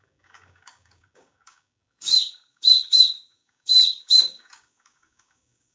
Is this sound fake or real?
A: fake